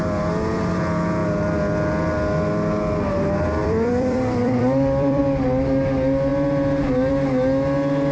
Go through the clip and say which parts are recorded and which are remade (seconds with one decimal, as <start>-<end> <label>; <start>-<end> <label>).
0.0-3.6 recorded; 3.6-5.2 remade; 5.2-8.1 recorded